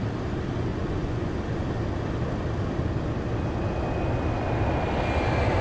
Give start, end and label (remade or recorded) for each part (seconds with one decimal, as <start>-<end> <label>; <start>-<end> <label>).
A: 0.0-0.7 recorded; 0.7-1.3 remade; 1.3-5.6 recorded